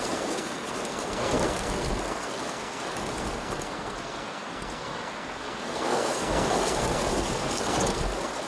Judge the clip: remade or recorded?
remade